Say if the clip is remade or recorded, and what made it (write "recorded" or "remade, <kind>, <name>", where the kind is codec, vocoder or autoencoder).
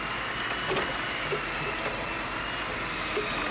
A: recorded